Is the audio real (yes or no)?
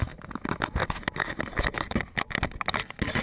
yes